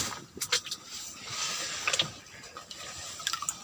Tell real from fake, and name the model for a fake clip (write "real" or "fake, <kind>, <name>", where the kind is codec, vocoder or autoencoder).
real